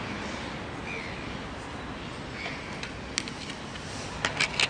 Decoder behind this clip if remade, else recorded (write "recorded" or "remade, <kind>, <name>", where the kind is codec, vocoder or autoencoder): recorded